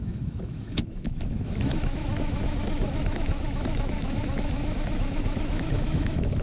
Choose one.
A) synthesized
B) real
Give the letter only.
A